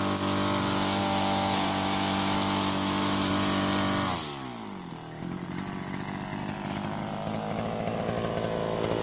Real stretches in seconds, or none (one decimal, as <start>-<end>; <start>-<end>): 0.0-1.0; 3.3-9.0